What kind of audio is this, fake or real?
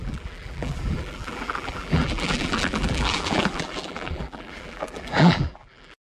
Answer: fake